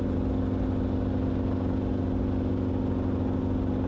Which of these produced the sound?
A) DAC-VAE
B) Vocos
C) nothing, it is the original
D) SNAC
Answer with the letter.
C